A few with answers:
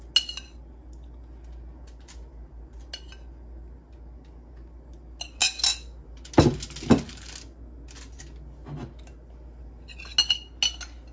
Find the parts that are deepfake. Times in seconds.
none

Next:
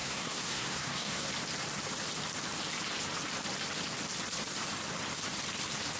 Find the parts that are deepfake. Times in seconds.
0.0-1.3 (codec, SNAC)

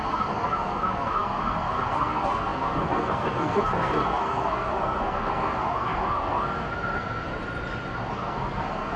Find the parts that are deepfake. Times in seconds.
0.0-7.3 (codec, SNAC); 8.1-9.0

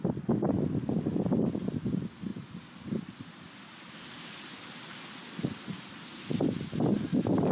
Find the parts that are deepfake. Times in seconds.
none

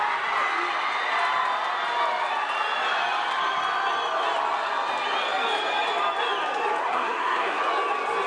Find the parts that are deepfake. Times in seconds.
6.8-7.6 (codec, SNAC)

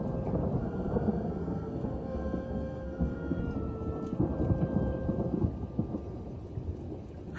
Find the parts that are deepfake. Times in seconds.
0.6-3.4 (codec, SNAC)